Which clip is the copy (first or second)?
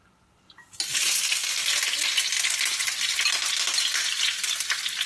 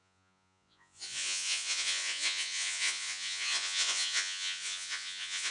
second